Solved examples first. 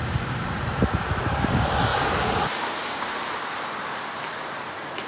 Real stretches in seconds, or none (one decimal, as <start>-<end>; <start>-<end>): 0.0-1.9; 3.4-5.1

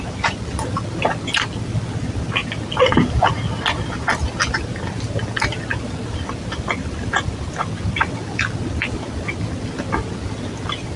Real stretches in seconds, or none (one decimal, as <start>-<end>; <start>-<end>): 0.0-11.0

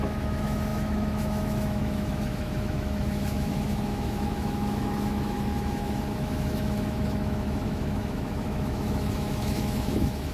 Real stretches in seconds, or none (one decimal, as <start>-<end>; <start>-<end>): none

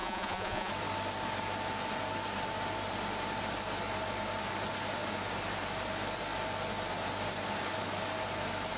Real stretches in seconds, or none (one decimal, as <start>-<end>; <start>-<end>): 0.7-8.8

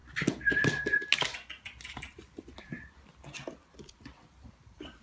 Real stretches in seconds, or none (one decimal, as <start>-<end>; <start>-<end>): 0.0-5.0

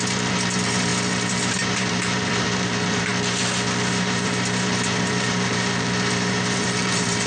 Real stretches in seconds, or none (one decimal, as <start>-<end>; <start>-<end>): 0.9-1.5; 3.1-3.9

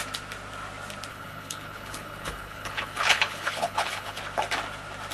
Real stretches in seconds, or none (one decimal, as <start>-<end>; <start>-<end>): 0.0-1.1; 4.2-5.1